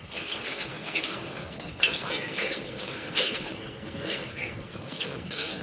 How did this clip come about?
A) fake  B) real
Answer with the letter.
A